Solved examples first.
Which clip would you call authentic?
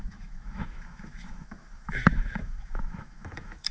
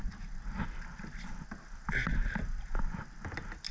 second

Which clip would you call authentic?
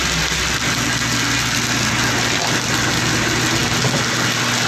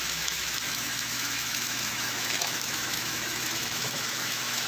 first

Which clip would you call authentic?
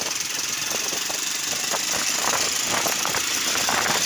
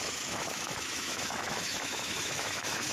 first